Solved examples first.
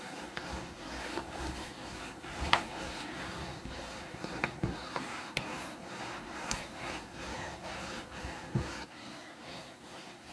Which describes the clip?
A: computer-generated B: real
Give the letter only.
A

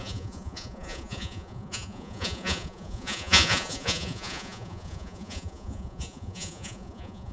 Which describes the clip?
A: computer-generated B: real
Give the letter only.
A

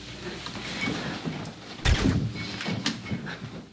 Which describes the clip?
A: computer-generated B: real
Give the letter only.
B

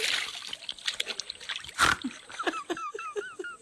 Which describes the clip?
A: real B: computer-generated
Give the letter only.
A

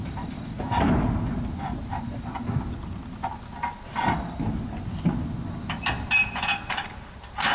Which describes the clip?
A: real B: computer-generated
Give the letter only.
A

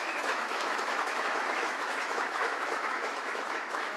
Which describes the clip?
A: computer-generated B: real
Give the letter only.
A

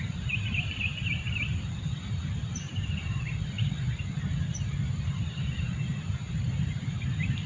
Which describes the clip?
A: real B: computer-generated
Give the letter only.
B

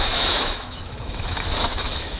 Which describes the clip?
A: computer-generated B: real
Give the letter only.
A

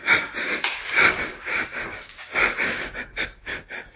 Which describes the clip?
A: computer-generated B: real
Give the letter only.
A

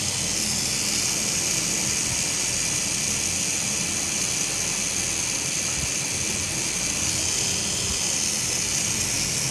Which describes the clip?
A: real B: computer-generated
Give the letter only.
A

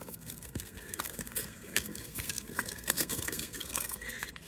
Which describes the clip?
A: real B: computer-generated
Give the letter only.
B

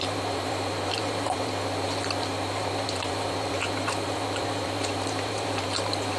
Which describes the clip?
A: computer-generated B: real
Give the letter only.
A